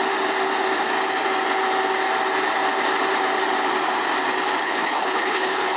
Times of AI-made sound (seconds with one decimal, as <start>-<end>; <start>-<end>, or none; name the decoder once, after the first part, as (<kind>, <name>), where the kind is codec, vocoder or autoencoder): 4.6-5.8 (codec, HILCodec)